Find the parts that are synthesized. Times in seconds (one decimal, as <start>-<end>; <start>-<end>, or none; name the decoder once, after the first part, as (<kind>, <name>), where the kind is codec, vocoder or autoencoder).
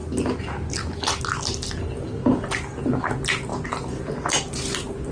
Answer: none